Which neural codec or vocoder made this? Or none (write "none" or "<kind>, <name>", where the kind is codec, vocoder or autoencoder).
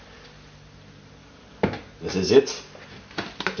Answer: none